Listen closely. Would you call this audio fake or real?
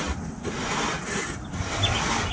real